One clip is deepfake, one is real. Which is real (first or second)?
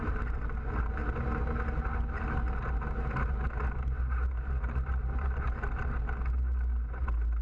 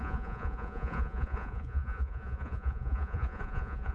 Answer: first